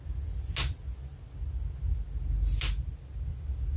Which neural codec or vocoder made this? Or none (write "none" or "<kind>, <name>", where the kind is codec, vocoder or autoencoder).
none